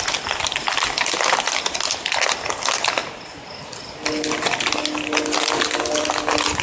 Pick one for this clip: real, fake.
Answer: real